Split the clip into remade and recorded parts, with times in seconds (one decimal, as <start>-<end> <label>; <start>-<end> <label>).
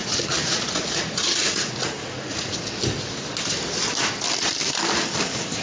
0.0-2.6 remade; 2.6-5.6 recorded